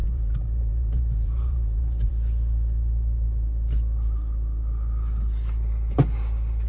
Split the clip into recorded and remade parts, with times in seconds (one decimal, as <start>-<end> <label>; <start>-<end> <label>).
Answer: 0.0-2.1 remade; 2.1-6.7 recorded